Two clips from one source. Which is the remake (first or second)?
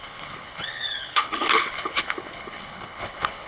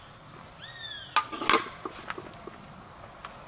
first